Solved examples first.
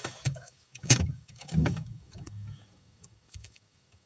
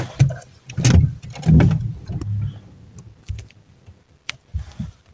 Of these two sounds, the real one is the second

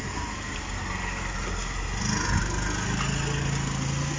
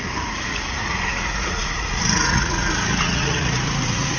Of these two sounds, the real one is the first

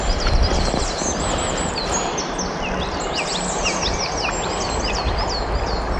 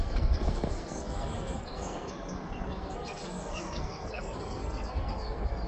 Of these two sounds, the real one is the first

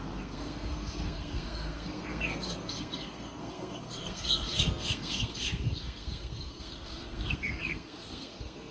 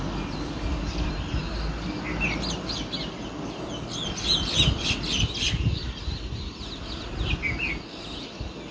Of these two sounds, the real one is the second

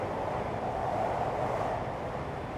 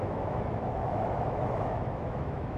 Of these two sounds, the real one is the first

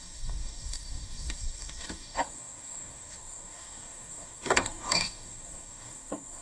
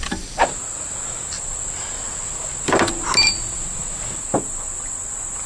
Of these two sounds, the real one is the second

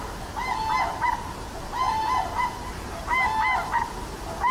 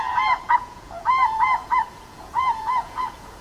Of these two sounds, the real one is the first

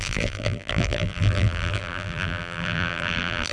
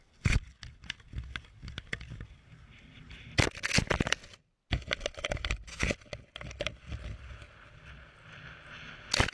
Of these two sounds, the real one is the second